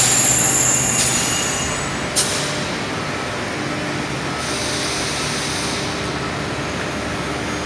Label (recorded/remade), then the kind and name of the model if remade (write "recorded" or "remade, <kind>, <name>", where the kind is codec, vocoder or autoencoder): recorded